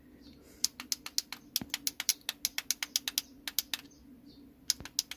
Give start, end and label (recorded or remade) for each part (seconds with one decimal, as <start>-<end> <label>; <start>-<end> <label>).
0.0-5.2 recorded